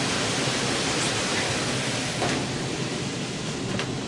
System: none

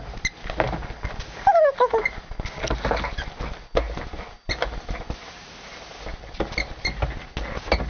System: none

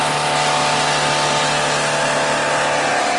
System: none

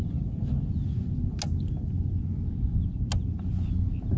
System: none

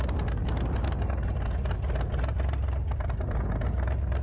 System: none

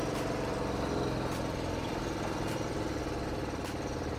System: vocoder, BigVGAN v2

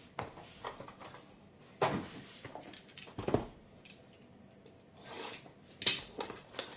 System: none